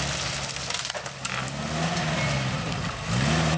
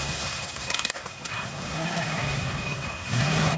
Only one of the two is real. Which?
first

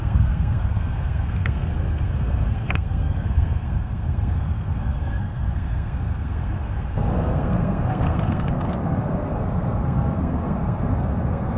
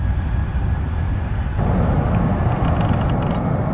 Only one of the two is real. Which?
second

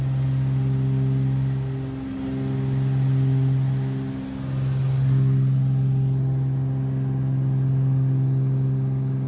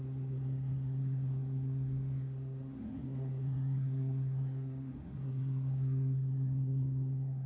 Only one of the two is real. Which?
first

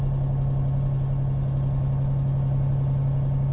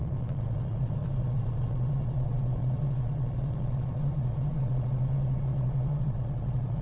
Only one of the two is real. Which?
first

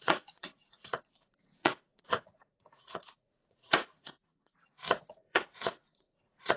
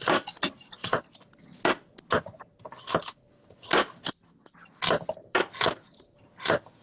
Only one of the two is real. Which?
second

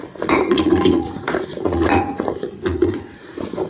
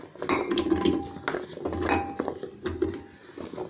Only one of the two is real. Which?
second